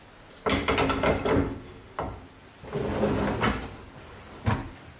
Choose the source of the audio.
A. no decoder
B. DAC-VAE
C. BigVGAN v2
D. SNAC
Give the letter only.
A